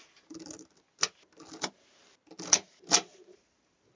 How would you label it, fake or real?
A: real